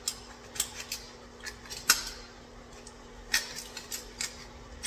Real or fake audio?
real